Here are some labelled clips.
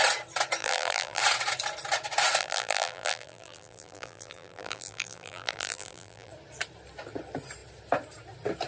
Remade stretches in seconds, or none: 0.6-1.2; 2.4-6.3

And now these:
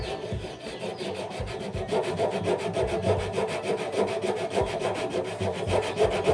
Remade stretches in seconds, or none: 0.0-6.3

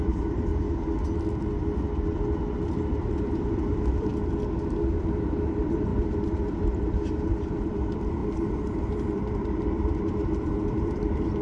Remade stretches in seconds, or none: 0.0-0.5; 3.0-4.1; 5.0-11.4

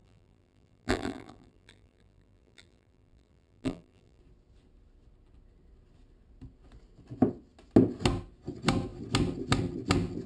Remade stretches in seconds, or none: 0.0-4.2

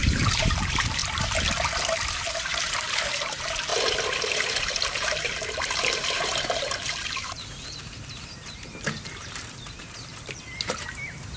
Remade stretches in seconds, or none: 0.0-1.0; 2.1-3.7; 4.2-11.4

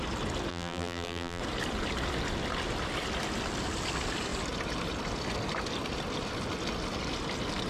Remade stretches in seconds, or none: 0.5-1.4